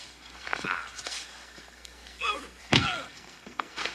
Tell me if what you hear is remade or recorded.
remade